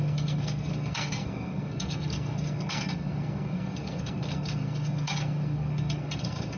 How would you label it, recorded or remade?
remade